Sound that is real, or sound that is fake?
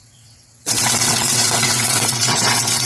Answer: fake